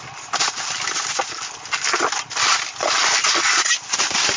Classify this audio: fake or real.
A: real